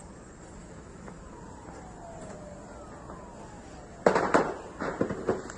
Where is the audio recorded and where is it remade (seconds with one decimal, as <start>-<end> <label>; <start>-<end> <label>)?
0.0-0.6 recorded; 0.6-1.3 remade; 1.3-5.6 recorded